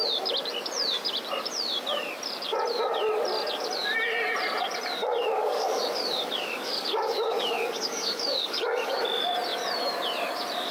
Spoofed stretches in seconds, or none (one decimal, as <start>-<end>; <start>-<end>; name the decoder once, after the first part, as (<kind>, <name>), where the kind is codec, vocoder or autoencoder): 5.0-9.0 (codec, DAC)